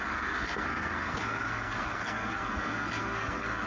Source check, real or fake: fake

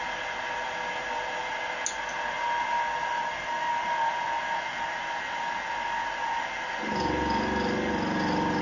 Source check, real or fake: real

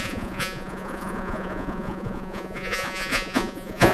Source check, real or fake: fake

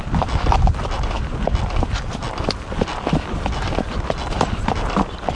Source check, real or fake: real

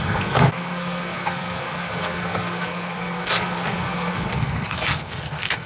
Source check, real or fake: fake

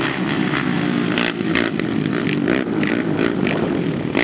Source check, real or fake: real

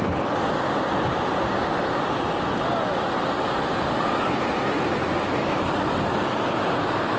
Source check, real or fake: real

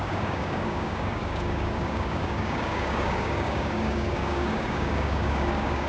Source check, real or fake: fake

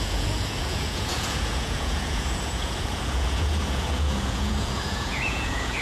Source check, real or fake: fake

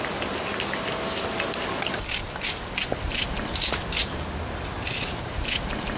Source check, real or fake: real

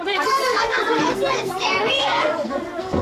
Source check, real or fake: fake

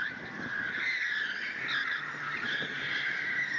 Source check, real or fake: real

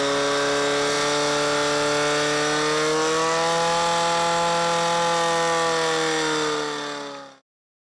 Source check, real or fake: real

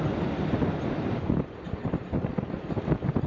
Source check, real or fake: real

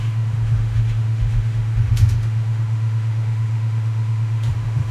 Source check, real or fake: fake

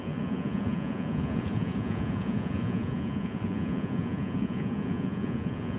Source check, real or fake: fake